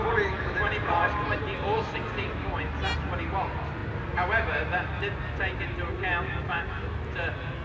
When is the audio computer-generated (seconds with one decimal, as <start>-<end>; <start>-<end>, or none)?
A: none